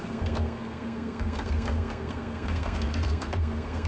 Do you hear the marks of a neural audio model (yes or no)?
yes